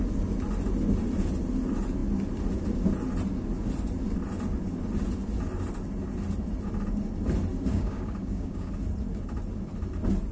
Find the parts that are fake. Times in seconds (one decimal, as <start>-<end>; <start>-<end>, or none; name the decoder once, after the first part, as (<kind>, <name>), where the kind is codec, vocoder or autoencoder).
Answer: 7.7-8.7 (codec, DAC)